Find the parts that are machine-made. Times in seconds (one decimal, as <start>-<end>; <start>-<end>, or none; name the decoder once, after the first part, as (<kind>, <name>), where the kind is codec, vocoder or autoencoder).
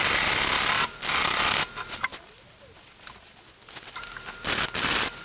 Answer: none